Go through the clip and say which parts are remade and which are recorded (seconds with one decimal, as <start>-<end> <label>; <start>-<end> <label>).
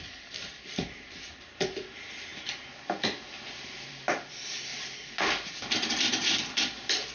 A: 0.0-2.3 remade; 2.3-3.9 recorded; 3.9-4.7 remade; 4.7-6.0 recorded; 6.0-7.1 remade